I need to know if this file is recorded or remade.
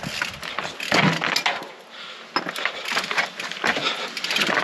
recorded